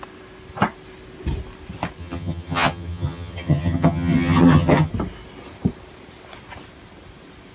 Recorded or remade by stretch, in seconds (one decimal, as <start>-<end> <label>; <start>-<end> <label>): 0.0-2.0 recorded; 2.0-4.9 remade; 4.9-7.5 recorded